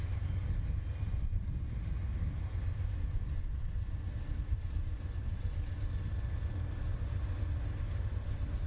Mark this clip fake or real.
real